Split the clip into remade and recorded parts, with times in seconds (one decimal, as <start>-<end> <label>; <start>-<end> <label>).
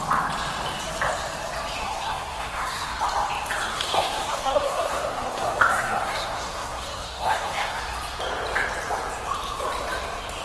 0.0-1.8 recorded; 1.8-2.9 remade; 2.9-3.7 recorded; 3.7-7.8 remade; 7.8-10.4 recorded